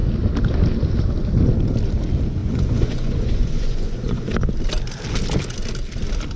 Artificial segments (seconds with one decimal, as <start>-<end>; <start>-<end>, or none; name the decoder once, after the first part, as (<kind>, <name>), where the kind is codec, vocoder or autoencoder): 2.4-4.3 (vocoder, Vocos)